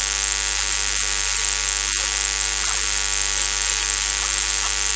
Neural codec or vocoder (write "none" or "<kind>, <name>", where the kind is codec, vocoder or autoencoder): none